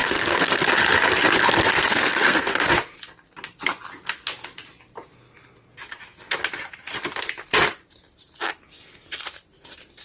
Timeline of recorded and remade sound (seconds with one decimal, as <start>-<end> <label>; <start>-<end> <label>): 0.0-0.6 remade; 0.6-1.6 recorded; 1.6-2.5 remade; 2.5-10.0 recorded